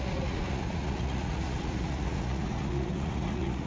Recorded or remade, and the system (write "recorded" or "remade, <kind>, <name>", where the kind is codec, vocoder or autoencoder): remade, vocoder, Vocos